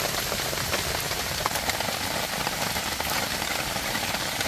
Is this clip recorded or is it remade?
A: recorded